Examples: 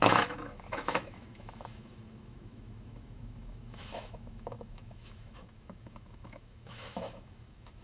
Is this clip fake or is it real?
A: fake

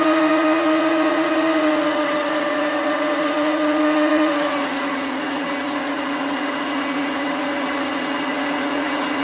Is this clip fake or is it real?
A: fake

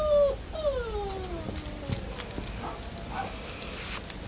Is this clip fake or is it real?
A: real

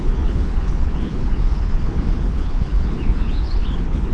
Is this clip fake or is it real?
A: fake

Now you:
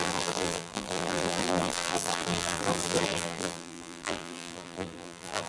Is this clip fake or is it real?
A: fake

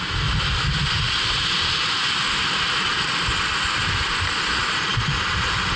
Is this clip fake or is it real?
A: real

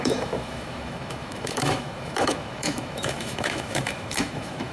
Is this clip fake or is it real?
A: fake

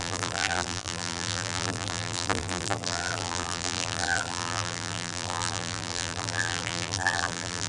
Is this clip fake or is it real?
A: fake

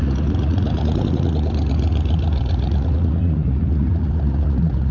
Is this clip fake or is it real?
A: fake